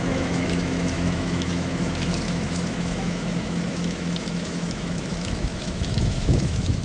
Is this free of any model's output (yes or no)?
no